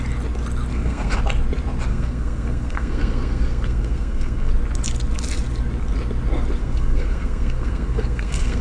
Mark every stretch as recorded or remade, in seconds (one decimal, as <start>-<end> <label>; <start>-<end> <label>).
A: 0.0-0.7 recorded; 0.7-1.2 remade; 1.2-1.9 recorded; 1.9-4.5 remade; 4.5-6.6 recorded; 6.6-8.6 remade